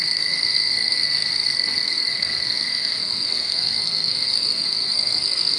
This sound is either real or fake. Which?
fake